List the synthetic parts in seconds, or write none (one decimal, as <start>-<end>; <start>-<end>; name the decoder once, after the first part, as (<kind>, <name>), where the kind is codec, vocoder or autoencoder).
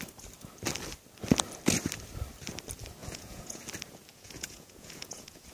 3.0-3.6 (vocoder, Vocos); 4.1-5.5